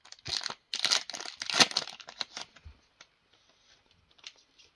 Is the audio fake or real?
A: real